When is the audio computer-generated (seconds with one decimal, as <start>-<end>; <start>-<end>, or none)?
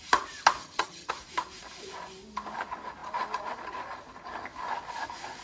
0.6-1.1